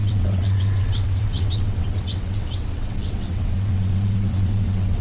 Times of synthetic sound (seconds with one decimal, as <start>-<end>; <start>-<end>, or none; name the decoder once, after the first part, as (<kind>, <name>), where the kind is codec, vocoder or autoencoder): 0.0-5.0 (vocoder, WaveNeXt)